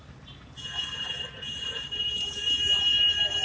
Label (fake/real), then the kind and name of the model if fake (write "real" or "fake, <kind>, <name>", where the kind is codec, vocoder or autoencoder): fake, vocoder, BigVGAN v2